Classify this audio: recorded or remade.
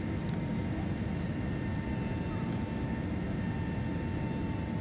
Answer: recorded